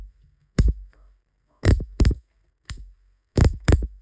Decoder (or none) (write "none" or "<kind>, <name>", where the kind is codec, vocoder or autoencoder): codec, SNAC